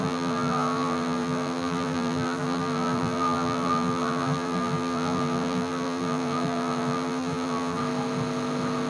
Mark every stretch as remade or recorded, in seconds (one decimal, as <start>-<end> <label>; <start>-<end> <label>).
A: 0.0-7.8 remade; 7.8-8.9 recorded